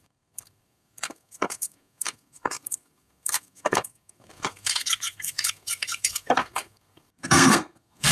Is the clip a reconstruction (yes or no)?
yes